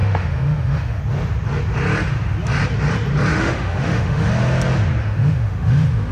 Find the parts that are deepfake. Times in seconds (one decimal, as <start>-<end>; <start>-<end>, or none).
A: 0.0-1.0; 3.3-4.3; 5.0-6.1

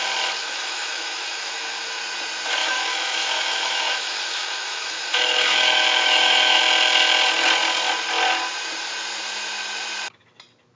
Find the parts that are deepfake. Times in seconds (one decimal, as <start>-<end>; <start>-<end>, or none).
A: 0.4-2.0; 2.6-6.6

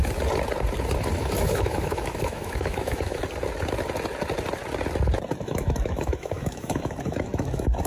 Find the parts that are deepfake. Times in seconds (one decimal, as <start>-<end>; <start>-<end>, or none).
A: 1.2-3.2; 5.4-7.9

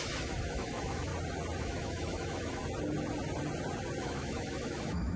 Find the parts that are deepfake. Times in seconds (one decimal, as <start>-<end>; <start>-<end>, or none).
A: 0.0-1.1; 1.6-2.6; 4.0-5.2

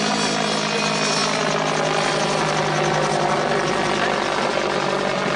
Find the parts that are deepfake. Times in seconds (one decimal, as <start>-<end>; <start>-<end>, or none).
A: none

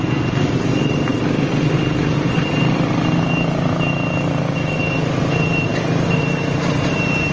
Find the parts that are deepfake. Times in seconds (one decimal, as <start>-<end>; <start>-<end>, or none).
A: none

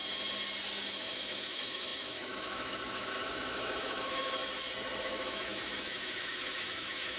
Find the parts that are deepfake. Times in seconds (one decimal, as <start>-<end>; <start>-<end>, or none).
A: 0.9-4.4; 5.0-7.2